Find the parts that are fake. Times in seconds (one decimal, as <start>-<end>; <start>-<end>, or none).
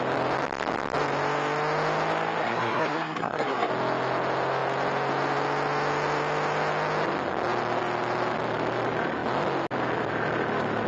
2.4-3.7